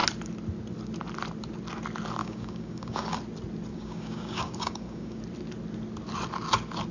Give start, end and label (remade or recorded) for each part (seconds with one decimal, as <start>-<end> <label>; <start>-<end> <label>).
0.0-2.2 recorded; 2.2-3.2 remade; 3.2-3.7 recorded; 3.7-5.2 remade; 5.2-6.9 recorded